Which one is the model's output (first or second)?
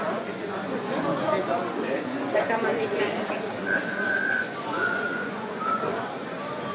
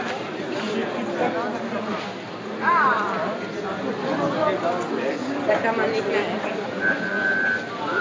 first